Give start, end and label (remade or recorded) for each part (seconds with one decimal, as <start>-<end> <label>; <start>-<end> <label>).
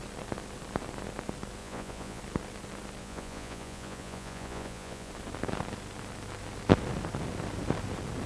0.0-1.6 recorded; 1.6-2.2 remade; 2.2-3.0 recorded; 3.0-5.1 remade; 5.1-8.3 recorded